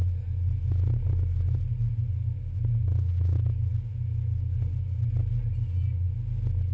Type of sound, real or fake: real